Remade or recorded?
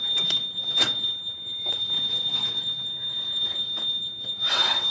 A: remade